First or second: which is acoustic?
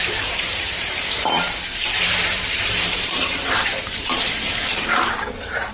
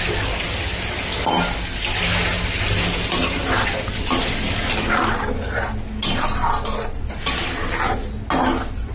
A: second